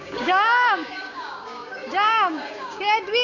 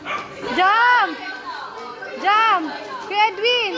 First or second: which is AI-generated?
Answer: first